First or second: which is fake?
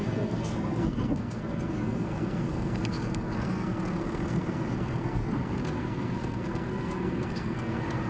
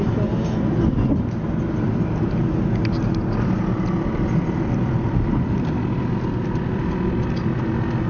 first